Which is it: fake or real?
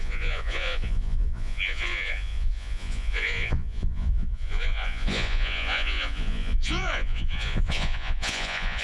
fake